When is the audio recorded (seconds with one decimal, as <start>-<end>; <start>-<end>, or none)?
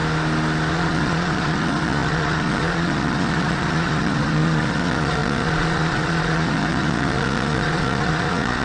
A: 0.0-0.7